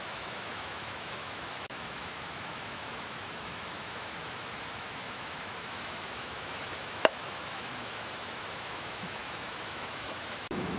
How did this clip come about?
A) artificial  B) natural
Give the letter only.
A